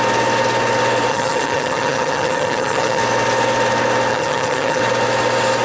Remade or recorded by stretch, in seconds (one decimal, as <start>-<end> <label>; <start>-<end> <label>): 0.0-1.1 recorded; 1.1-3.0 remade; 3.0-4.1 recorded; 4.1-4.8 remade; 4.8-5.6 recorded